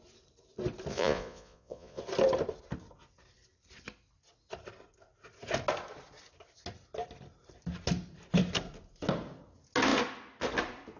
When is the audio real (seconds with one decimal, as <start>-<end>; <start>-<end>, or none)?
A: 0.0-0.9; 2.0-11.0